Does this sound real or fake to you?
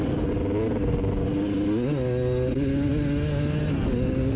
real